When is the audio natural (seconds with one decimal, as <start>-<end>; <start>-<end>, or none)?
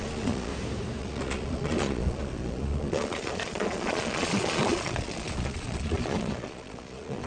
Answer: 0.5-1.0